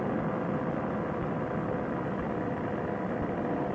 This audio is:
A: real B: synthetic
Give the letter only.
A